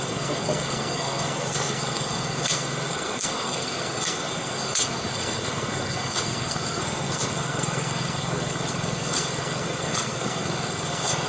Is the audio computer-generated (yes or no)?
yes